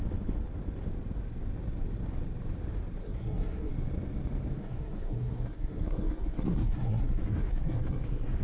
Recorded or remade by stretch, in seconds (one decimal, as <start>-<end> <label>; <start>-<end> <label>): 0.0-3.0 recorded; 3.0-3.7 remade; 3.7-4.6 recorded; 4.6-8.4 remade